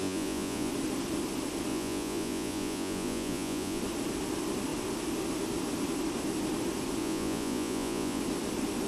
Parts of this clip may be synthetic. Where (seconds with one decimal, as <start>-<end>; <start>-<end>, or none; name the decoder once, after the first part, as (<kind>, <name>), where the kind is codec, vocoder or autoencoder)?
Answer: 0.0-0.7 (vocoder, Vocos); 1.7-3.8; 7.0-8.2